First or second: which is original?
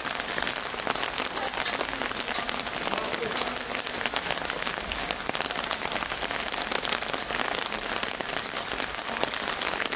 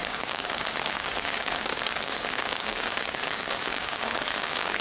first